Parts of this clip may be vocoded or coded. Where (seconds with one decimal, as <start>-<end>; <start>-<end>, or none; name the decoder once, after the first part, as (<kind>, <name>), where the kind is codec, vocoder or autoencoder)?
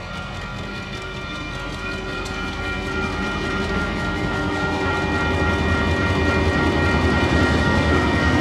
0.0-3.1 (codec, SNAC); 3.7-4.9; 7.6-8.4